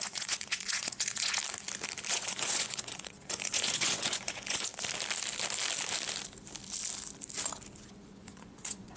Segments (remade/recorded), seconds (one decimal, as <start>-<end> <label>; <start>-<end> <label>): 0.0-1.4 remade; 1.4-2.1 recorded; 2.1-4.7 remade; 4.7-7.9 recorded; 7.9-9.0 remade